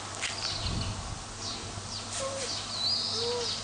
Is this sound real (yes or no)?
yes